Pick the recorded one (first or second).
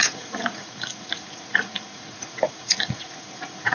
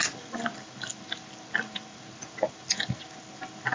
second